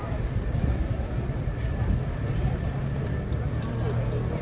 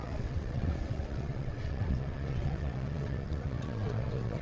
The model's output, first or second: second